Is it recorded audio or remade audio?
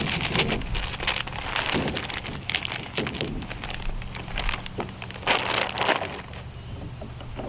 recorded